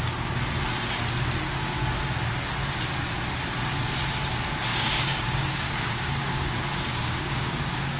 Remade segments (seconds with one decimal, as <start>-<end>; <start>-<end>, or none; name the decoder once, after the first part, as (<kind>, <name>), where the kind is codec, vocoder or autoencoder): 4.7-6.5 (codec, DAC); 6.9-8.0